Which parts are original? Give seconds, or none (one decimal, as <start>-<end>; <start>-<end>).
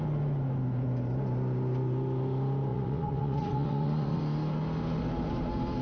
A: 0.0-2.7; 4.2-5.8